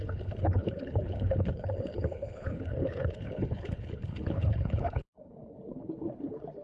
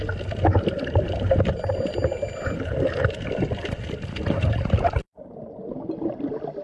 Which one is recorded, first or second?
second